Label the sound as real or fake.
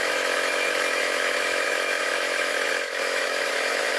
fake